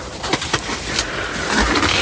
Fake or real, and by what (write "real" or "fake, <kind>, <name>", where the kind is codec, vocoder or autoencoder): real